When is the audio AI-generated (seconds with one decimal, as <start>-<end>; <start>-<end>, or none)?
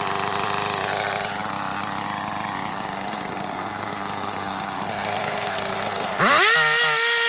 2.7-6.2